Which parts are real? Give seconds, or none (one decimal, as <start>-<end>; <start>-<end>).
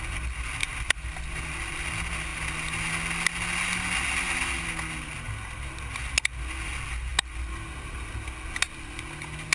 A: 0.0-0.6; 1.5-9.5